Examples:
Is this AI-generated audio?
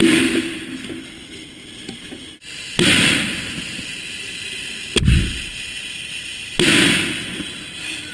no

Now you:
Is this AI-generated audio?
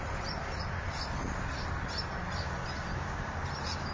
no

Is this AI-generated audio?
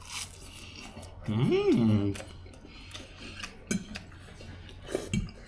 no